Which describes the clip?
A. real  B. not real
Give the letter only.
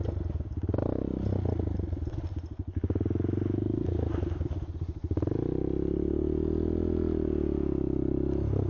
A